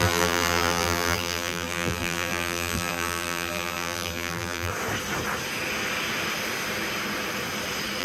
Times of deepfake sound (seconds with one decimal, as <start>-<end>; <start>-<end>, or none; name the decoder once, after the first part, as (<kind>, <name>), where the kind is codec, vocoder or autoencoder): 0.0-4.7 (vocoder, BigVGAN v2)